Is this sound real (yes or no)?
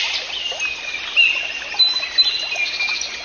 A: yes